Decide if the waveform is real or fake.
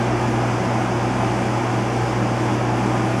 real